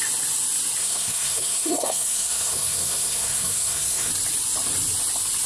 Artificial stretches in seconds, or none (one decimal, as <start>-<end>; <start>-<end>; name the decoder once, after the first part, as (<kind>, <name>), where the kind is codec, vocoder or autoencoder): 0.8-4.1 (codec, SNAC)